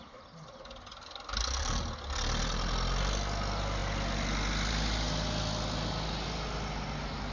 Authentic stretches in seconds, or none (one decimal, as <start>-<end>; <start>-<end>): 0.0-7.3